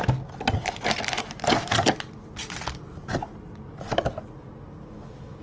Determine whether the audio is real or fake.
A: real